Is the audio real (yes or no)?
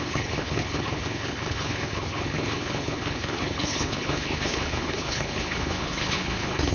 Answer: no